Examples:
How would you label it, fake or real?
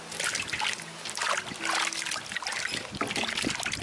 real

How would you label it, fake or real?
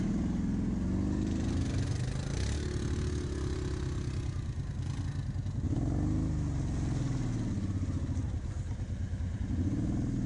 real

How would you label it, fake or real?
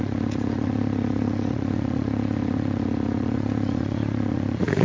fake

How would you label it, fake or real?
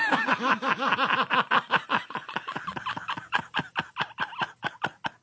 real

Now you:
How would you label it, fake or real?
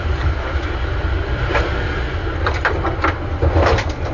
fake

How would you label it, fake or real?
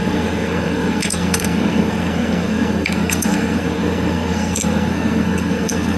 fake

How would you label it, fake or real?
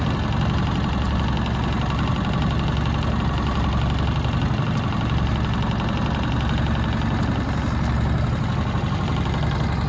real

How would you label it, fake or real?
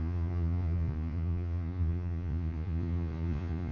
fake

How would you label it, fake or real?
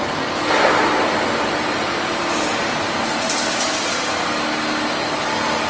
real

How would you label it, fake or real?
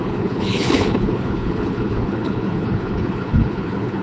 fake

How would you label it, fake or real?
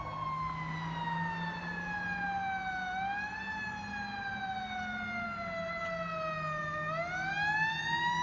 real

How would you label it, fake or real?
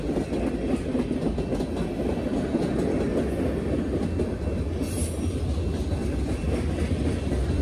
real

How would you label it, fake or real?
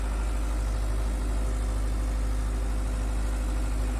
real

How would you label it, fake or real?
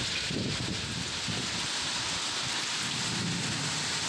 real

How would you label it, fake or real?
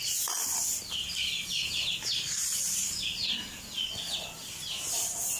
real